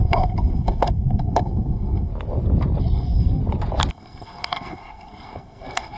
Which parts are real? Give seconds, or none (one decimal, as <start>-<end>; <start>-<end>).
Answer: 2.1-2.8; 3.4-3.9